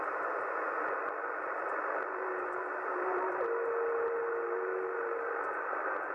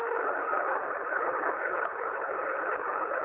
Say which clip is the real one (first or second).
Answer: first